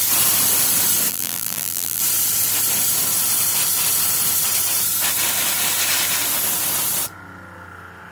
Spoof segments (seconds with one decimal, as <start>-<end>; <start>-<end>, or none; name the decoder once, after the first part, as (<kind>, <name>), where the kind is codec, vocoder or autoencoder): 1.1-2.0 (vocoder, BigVGAN v2)